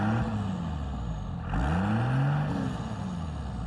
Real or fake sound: real